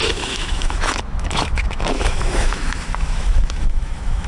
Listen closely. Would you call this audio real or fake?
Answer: fake